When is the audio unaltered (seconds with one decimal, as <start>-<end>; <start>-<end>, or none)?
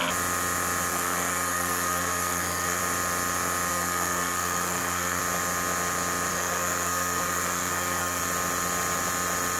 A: 0.0-0.9; 2.8-3.7; 5.2-6.3; 8.2-9.6